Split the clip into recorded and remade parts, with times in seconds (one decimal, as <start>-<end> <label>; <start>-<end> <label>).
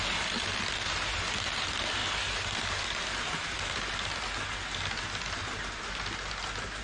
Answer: 0.0-6.8 recorded